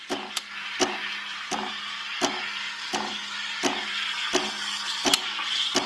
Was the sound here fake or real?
real